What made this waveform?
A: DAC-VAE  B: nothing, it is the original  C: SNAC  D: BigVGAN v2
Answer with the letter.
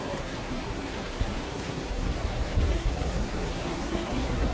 C